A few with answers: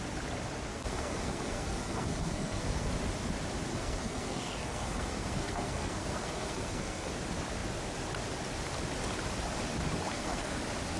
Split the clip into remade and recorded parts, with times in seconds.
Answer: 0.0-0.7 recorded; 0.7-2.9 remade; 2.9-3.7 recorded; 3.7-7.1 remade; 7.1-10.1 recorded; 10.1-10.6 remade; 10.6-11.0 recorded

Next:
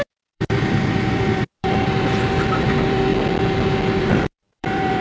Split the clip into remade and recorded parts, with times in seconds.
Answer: 0.0-3.1 remade; 3.1-4.0 recorded; 4.0-5.0 remade

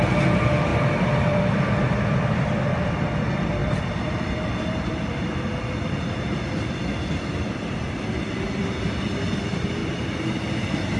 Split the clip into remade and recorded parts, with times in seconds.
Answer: 0.0-3.6 recorded; 3.6-4.4 remade; 4.4-11.0 recorded

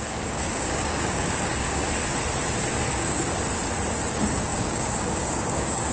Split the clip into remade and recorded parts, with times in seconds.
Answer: 0.0-1.8 remade; 1.8-2.9 recorded; 2.9-3.3 remade; 3.3-4.1 recorded; 4.1-5.9 remade